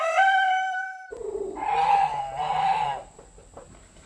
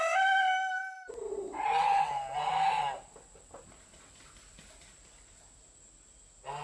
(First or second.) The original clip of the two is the second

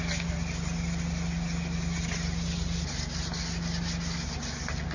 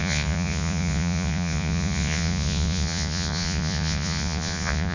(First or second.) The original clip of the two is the first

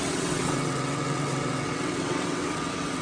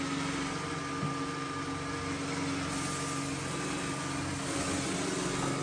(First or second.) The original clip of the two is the second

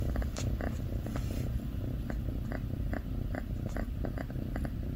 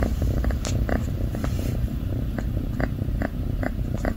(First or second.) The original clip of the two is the first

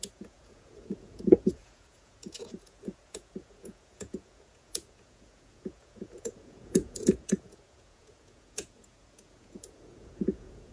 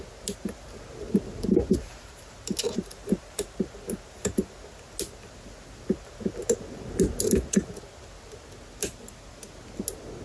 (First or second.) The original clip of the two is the second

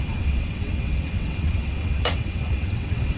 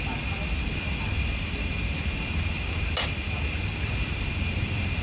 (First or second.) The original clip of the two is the second